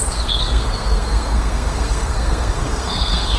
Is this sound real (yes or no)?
no